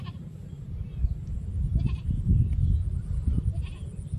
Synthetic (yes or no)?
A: no